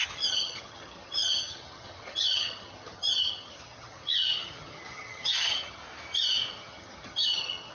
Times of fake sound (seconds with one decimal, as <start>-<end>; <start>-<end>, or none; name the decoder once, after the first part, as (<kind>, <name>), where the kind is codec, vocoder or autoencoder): 0.0-5.8 (vocoder, HiFi-GAN); 6.5-7.7